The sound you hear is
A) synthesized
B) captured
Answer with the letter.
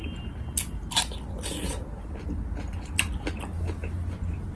B